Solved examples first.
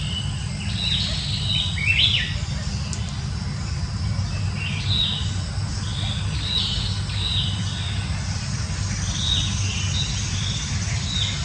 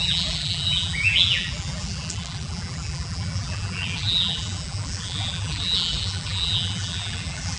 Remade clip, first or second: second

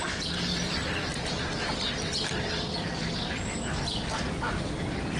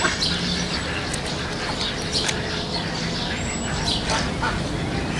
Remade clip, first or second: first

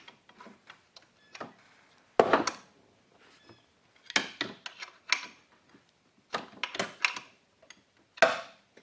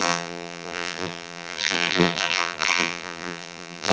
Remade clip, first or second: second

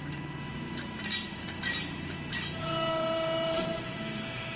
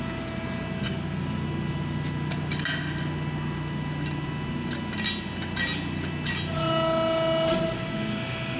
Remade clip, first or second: first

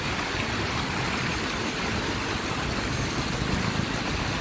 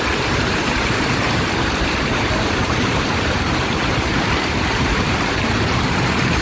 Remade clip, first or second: second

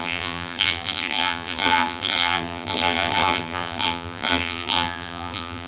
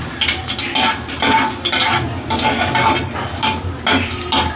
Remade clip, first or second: first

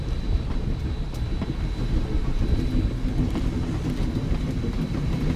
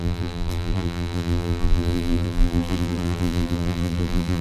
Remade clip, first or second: second